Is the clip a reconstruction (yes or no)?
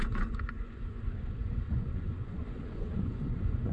yes